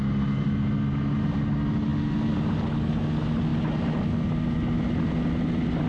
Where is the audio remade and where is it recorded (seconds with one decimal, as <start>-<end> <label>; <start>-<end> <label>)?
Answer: 0.0-5.9 recorded